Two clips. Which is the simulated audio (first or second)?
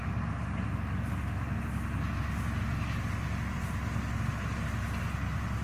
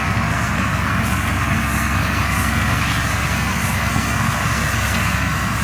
second